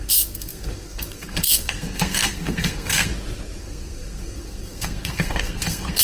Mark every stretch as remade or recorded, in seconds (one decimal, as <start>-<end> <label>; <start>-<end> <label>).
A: 0.0-3.1 remade; 3.1-3.6 recorded; 3.6-6.0 remade